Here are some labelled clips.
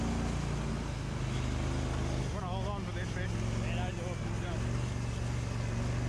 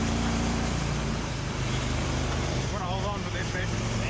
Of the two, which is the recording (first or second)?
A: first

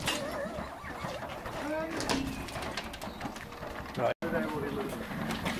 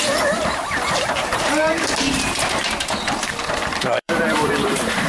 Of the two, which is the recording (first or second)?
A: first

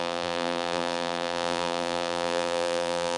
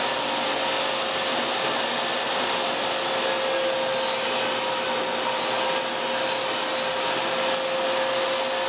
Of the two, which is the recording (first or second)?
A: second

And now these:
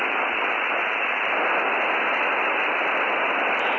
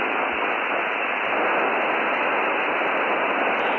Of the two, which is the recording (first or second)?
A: second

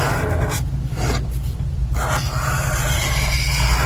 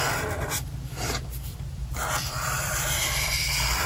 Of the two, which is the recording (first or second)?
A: first